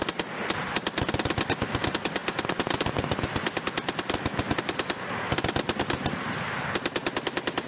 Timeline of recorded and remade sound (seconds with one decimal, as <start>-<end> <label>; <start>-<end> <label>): 0.0-7.7 recorded